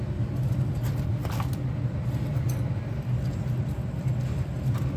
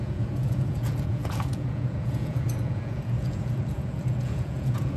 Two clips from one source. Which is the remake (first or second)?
second